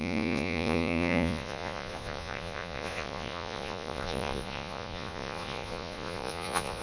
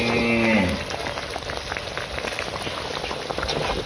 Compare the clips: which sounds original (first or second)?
second